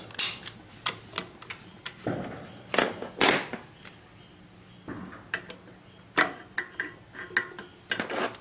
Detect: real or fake real